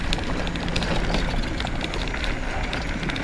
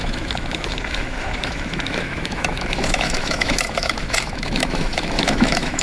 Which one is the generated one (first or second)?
second